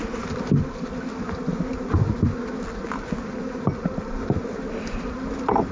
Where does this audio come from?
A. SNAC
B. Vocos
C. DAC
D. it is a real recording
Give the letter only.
D